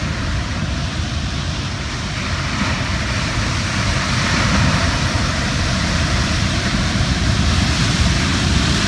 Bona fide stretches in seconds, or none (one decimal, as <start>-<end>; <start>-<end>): 0.0-5.3; 7.9-8.9